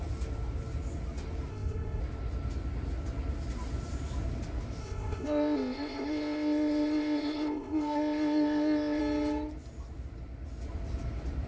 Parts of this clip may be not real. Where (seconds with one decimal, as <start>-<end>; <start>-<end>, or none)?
1.5-2.0; 4.8-9.0